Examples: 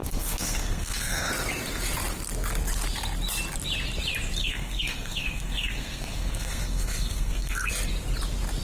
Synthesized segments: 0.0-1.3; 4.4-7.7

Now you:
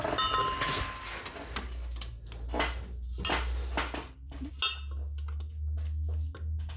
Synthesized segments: none